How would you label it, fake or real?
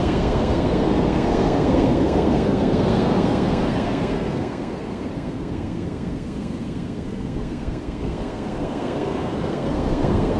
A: fake